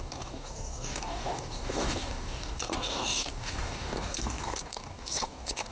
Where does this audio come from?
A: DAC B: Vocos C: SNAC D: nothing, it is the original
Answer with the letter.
A